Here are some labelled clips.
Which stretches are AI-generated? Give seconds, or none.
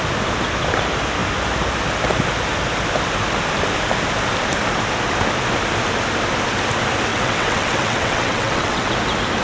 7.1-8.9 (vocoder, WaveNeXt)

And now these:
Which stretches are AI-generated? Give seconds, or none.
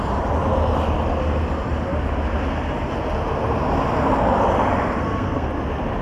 5.0-5.5 (codec, SNAC)